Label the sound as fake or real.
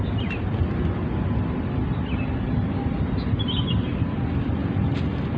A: real